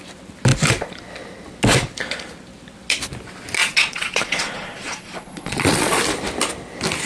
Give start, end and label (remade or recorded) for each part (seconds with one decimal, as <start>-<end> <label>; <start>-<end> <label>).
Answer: 0.0-3.6 recorded; 3.6-6.0 remade; 6.0-7.1 recorded